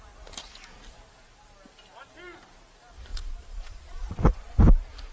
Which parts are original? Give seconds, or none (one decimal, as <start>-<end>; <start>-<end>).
0.0-3.1; 4.6-5.1